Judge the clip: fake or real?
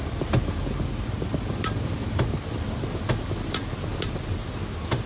real